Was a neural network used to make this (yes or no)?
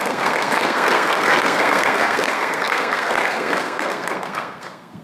yes